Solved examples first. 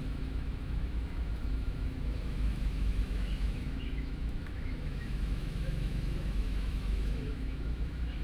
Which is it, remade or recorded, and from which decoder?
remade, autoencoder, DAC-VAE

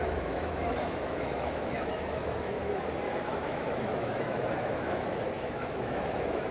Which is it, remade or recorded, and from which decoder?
remade, autoencoder, DAC-VAE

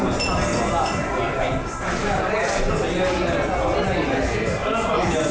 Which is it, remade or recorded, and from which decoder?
recorded